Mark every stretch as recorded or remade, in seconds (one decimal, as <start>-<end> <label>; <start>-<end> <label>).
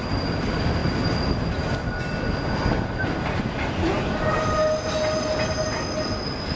0.0-6.6 recorded